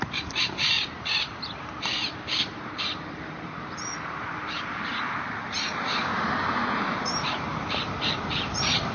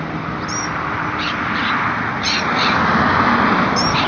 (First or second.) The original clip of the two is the second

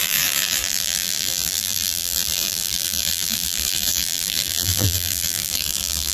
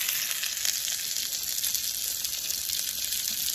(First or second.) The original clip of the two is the second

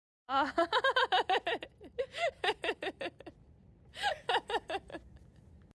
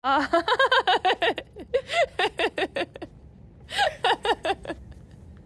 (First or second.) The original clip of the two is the second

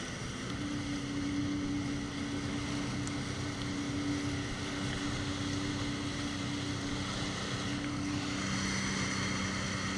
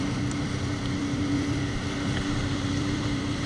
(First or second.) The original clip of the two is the first